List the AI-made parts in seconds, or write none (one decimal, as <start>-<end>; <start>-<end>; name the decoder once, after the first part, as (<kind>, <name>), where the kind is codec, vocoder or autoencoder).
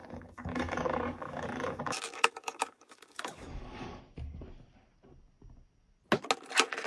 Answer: 0.0-4.0 (codec, DAC)